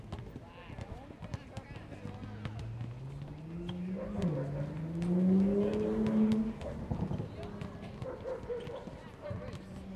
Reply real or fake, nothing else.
real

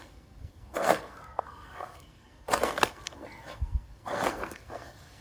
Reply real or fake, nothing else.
fake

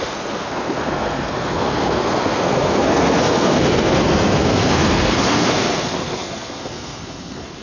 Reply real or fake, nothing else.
fake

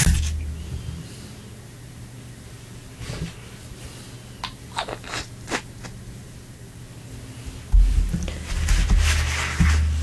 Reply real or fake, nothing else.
real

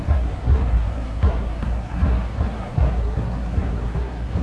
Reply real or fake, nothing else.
fake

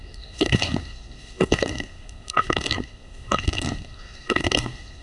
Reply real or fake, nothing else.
fake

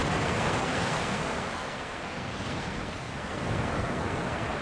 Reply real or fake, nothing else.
fake